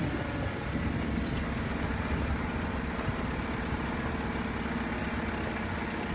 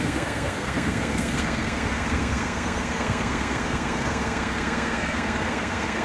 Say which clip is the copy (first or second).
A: second